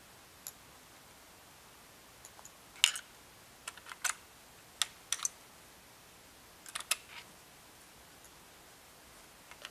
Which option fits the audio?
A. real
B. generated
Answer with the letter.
A